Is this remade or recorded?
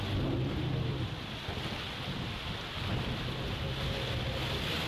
recorded